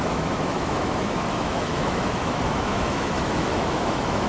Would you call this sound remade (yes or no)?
yes